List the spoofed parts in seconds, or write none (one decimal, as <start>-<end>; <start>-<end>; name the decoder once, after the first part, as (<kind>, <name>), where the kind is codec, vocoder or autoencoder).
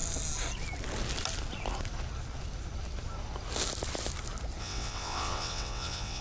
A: 4.6-6.2 (vocoder, WaveNeXt)